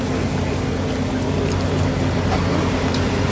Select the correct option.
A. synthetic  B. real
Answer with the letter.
B